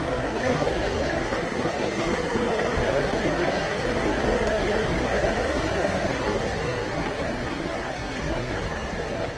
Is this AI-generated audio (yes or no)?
yes